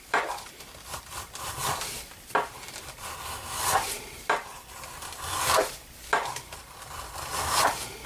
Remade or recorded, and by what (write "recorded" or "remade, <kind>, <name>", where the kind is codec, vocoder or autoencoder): remade, vocoder, BigVGAN v2